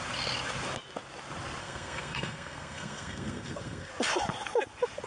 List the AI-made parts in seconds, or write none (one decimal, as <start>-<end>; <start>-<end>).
1.6-3.9